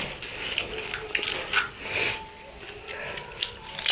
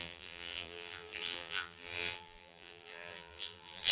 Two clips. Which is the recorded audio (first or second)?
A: first